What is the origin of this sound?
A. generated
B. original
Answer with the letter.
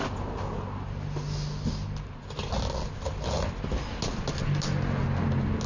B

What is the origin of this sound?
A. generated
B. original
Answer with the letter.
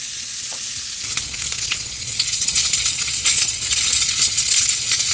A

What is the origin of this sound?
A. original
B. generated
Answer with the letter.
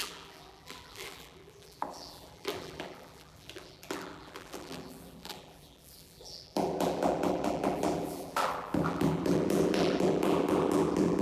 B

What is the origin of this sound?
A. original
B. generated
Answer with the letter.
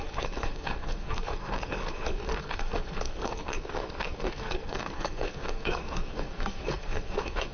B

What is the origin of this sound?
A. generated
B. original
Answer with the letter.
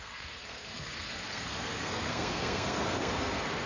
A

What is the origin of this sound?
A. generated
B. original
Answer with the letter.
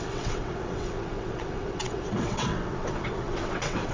A